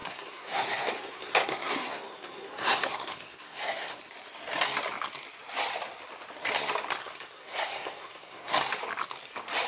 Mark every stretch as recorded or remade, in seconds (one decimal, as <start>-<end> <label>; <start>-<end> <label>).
0.0-4.0 remade; 4.0-7.0 recorded; 7.0-8.5 remade; 8.5-9.7 recorded